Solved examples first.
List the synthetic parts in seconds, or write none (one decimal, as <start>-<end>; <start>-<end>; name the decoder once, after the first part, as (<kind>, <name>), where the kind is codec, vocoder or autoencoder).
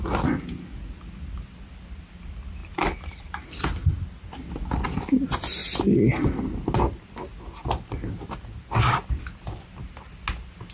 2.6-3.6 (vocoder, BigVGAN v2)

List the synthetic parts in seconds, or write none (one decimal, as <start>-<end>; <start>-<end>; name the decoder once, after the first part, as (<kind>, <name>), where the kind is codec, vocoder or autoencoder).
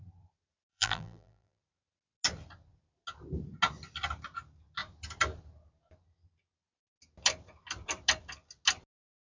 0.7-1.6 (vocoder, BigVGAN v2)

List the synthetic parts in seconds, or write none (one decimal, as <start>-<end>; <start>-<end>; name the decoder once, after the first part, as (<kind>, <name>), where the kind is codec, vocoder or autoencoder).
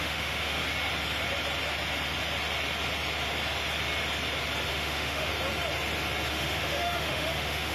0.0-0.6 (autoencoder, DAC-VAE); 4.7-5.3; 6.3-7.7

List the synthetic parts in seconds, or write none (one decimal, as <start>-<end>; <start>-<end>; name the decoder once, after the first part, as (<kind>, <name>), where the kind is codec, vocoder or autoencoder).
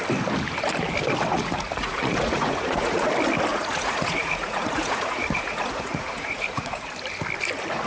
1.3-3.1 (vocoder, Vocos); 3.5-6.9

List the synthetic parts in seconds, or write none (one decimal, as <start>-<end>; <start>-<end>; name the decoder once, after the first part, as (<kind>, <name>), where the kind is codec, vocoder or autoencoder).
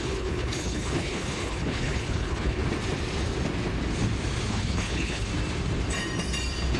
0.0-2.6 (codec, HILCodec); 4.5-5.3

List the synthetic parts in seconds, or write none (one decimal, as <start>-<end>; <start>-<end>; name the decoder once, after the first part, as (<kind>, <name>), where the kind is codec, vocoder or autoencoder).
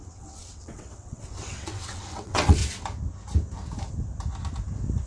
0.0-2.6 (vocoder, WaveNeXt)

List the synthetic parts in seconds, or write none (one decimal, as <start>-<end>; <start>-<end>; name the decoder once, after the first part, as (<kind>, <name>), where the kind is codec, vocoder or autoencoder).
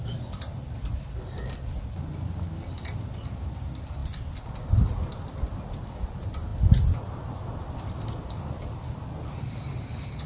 none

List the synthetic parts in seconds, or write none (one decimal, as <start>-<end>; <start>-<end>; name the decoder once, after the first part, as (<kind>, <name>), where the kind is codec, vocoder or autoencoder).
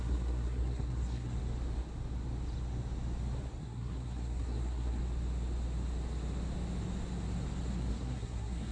0.0-1.4 (codec, SNAC); 3.6-5.0; 7.7-8.7